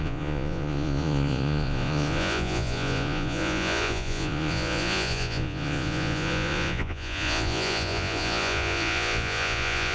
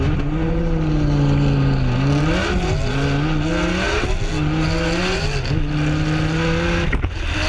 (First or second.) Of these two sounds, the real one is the second